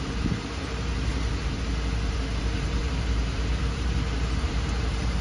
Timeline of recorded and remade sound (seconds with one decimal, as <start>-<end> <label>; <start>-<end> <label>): 0.0-1.4 remade; 1.4-2.4 recorded; 2.4-5.2 remade